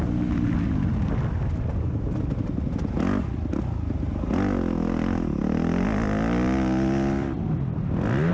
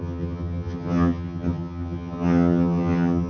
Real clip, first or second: first